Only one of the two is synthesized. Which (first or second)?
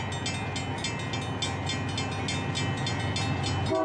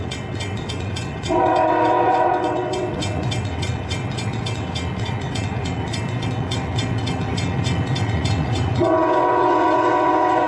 second